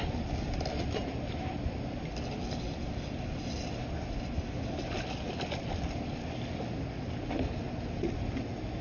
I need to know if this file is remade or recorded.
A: recorded